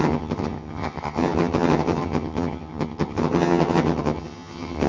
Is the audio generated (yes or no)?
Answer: yes